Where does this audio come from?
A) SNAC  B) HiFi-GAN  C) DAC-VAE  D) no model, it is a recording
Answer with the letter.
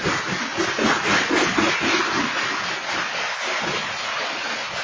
D